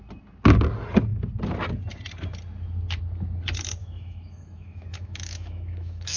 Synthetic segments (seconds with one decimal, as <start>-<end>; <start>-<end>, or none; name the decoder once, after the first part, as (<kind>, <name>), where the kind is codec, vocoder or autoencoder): 3.8-6.2 (autoencoder, DAC-VAE)